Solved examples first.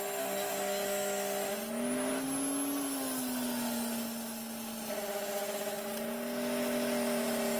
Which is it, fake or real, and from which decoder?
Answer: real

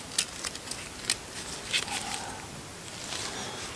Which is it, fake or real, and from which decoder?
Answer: real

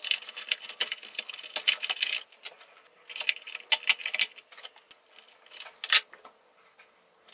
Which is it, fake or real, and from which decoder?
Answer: real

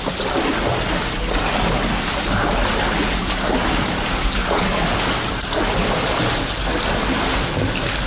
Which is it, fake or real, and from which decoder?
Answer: real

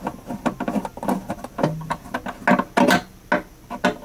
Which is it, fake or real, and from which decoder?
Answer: real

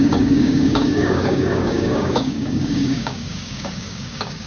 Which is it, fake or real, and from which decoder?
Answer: fake, codec, DAC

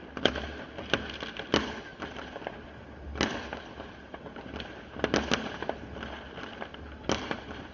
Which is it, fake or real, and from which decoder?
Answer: real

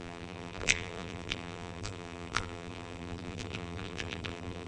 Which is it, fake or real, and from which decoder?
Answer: fake, vocoder, BigVGAN v2